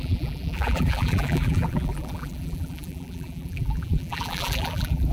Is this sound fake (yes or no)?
yes